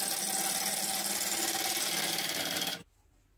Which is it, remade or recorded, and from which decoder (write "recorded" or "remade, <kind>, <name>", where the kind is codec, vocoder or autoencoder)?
recorded